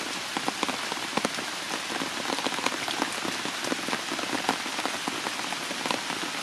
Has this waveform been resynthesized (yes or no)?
no